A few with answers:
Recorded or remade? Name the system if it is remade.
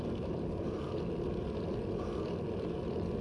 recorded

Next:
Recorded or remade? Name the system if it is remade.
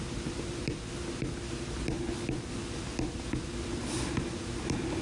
recorded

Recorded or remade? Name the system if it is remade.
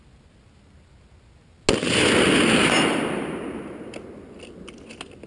recorded